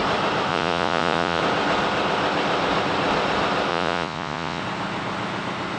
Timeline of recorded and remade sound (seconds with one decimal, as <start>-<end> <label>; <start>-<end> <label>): 0.0-0.5 recorded; 0.5-1.4 remade; 1.4-3.7 recorded; 3.7-4.6 remade; 4.6-5.8 recorded